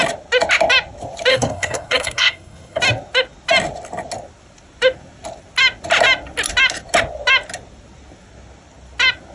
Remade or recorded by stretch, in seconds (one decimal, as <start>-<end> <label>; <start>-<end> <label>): 0.0-1.3 recorded; 1.3-2.8 remade; 2.8-9.3 recorded